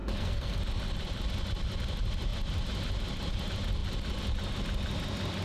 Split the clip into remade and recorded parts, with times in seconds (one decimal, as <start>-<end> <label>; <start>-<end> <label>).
0.0-0.6 remade; 0.6-5.4 recorded